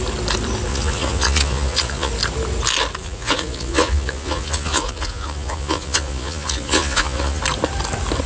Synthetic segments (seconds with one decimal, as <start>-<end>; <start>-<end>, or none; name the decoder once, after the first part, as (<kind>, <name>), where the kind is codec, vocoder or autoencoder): 0.7-2.1 (vocoder, Vocos); 3.0-7.4